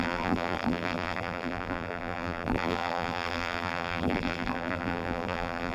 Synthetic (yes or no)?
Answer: yes